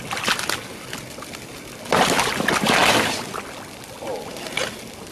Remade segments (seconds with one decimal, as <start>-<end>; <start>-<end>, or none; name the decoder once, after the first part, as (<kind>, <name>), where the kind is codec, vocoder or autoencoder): none